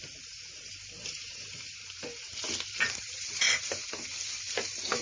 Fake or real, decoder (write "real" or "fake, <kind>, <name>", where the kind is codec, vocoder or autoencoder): fake, vocoder, BigVGAN v2